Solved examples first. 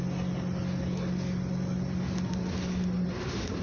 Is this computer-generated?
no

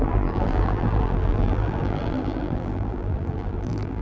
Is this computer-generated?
yes